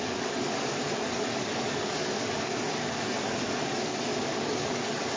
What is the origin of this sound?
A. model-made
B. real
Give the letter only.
A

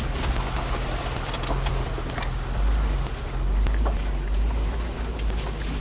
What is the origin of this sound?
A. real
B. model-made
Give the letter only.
A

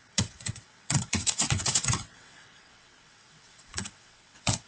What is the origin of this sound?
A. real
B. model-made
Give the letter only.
B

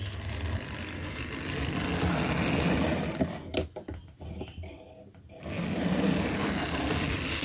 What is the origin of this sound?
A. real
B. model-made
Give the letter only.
A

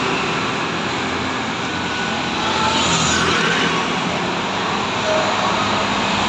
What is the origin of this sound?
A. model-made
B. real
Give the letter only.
B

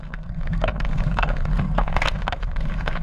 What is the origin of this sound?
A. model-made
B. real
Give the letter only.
A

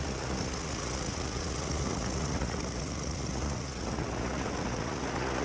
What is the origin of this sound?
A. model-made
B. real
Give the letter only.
A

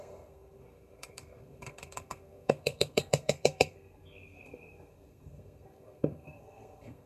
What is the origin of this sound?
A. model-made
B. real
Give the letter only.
A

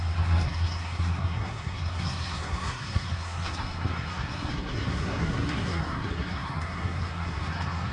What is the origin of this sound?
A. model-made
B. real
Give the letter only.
A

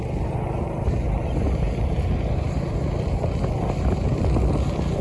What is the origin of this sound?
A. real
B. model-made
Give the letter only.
A